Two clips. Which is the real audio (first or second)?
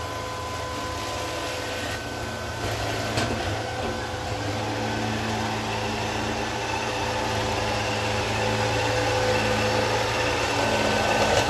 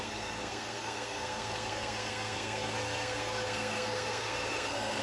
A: first